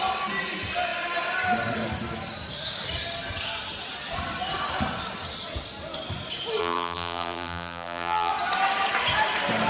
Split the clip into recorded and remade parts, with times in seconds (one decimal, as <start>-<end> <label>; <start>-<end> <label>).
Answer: 0.0-6.6 recorded; 6.6-8.3 remade; 8.3-9.7 recorded